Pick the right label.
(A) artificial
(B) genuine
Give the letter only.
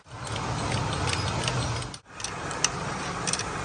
B